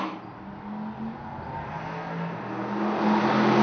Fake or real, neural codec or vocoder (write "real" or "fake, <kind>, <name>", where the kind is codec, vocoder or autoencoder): real